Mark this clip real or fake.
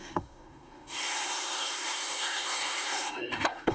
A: fake